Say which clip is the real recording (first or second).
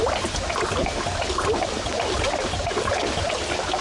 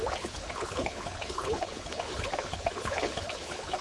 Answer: first